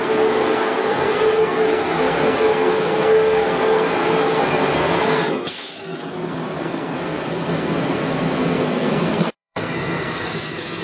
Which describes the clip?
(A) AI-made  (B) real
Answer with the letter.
A